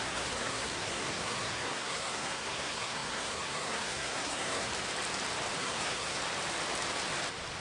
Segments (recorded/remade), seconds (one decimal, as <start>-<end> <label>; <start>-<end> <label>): 0.0-4.7 remade; 4.7-5.6 recorded; 5.6-6.2 remade; 6.2-7.6 recorded